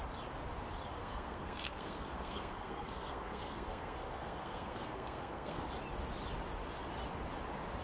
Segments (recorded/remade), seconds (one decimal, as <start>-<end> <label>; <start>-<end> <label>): 0.0-1.0 recorded; 1.0-5.7 remade; 5.7-7.8 recorded